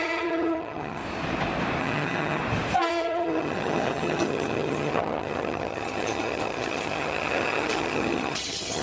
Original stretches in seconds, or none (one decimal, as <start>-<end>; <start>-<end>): 1.0-1.8; 2.4-2.9